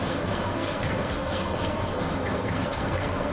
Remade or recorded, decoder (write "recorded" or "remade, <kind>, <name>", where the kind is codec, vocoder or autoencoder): remade, codec, SNAC